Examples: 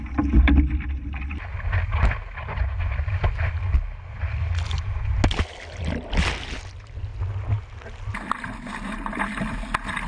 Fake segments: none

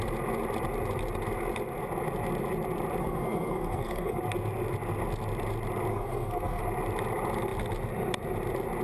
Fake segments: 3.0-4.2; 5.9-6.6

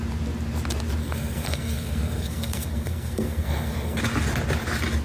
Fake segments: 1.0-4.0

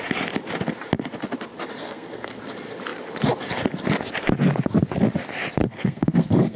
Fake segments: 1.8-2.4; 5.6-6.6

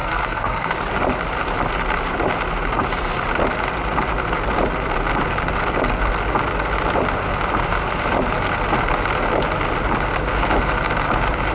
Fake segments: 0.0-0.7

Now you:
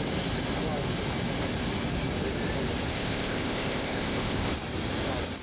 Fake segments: 2.9-4.5

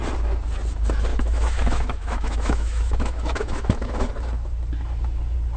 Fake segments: 1.1-4.1

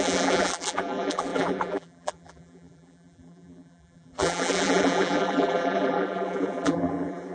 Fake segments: 0.0-7.3